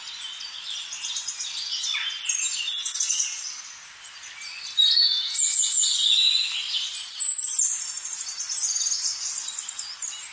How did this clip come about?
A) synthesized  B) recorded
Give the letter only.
B